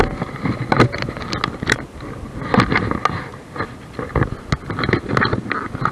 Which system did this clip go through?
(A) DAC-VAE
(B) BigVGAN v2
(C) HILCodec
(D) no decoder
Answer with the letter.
D